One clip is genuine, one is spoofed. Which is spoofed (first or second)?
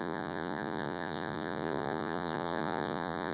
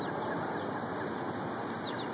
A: first